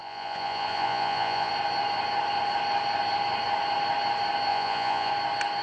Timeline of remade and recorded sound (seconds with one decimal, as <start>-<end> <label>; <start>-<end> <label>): 0.0-1.5 remade; 1.5-4.5 recorded; 4.5-5.1 remade; 5.1-5.6 recorded